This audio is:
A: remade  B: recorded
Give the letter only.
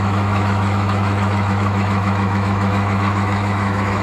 A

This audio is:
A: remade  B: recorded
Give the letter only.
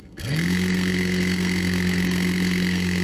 A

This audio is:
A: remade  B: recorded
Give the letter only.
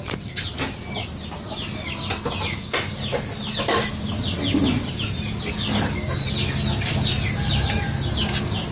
B